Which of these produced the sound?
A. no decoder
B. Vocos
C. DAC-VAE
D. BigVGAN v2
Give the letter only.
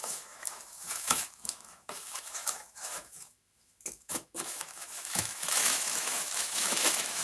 C